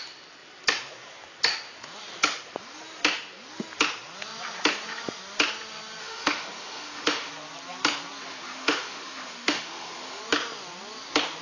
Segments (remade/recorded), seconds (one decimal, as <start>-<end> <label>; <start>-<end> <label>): 0.0-6.0 recorded; 6.0-7.3 remade; 7.3-8.3 recorded; 8.3-10.2 remade; 10.2-11.4 recorded